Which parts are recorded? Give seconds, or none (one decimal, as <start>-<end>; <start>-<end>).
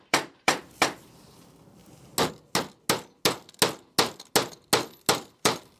1.8-5.3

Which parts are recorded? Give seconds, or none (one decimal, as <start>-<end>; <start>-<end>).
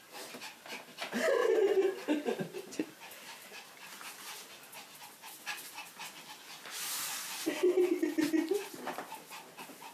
0.0-1.4; 4.2-9.9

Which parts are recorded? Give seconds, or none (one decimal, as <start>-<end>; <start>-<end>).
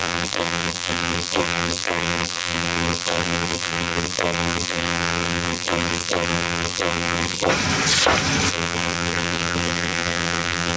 7.5-8.5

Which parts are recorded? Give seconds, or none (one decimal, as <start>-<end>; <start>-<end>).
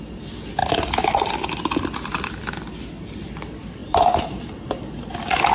0.0-0.6; 2.5-3.8; 5.1-5.5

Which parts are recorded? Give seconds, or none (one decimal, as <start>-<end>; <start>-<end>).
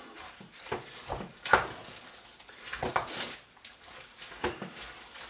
0.0-5.3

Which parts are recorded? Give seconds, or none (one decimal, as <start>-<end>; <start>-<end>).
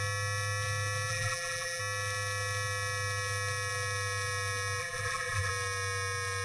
0.0-1.1; 1.8-4.8; 5.5-6.4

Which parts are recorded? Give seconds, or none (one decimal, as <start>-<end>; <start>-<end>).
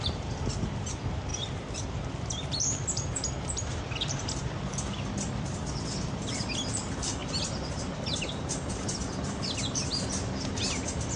7.2-7.7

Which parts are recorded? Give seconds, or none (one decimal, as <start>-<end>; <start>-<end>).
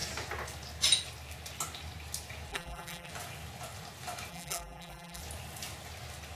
0.0-2.5; 3.1-4.3; 5.2-6.4